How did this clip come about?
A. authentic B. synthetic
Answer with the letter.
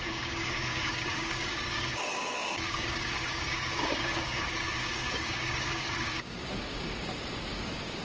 B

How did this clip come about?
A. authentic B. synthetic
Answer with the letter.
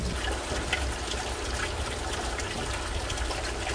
A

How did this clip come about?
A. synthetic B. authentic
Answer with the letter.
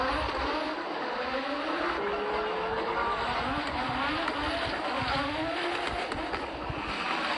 B